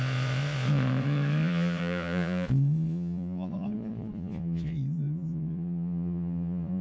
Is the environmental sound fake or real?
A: fake